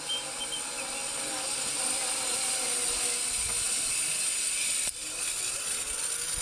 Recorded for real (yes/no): yes